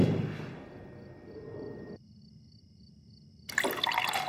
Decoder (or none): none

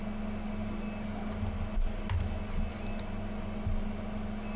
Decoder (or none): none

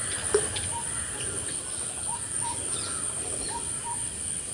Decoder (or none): none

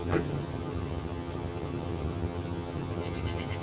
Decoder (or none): vocoder, HiFi-GAN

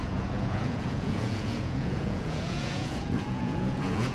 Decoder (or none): vocoder, Vocos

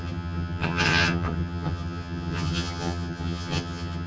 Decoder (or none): vocoder, HiFi-GAN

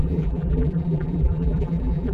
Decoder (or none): vocoder, BigVGAN v2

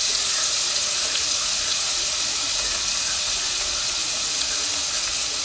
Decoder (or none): vocoder, Vocos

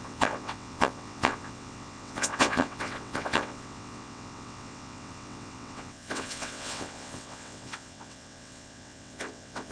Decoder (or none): vocoder, WaveNeXt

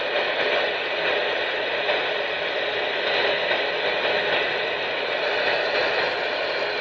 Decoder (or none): none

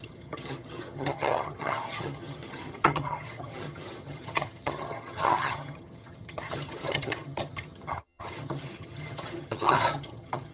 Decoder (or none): vocoder, HiFi-GAN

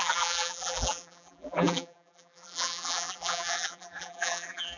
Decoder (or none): vocoder, BigVGAN v2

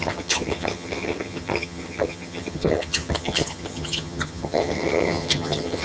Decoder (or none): vocoder, HiFi-GAN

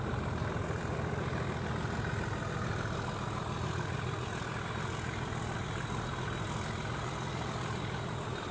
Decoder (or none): none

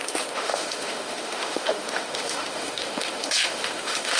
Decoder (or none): autoencoder, DAC-VAE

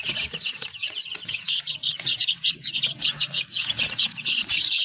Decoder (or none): vocoder, WaveNeXt